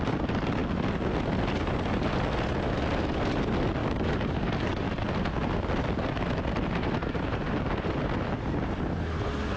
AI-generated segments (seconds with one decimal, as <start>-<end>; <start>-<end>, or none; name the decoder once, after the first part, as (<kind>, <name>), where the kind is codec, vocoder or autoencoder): 3.8-5.1 (codec, DAC)